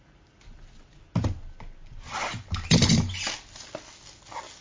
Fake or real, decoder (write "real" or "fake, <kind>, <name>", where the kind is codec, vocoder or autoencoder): real